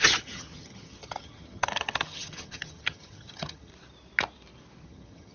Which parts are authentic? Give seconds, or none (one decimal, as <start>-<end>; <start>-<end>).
3.7-4.8